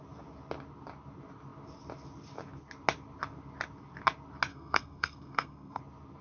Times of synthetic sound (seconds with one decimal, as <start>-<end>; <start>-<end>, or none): 4.5-5.8

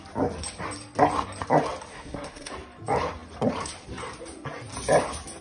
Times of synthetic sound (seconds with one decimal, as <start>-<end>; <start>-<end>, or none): 1.9-2.5

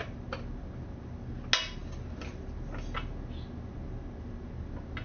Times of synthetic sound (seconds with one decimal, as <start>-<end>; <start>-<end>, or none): none